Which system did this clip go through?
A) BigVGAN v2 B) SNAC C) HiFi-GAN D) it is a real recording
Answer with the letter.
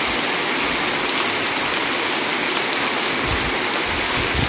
D